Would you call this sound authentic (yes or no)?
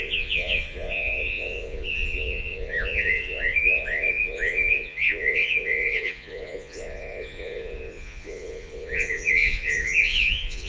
no